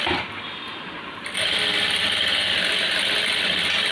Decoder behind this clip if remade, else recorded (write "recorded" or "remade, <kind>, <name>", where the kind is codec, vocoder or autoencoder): recorded